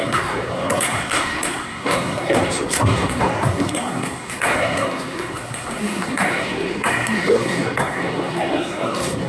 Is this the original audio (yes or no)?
no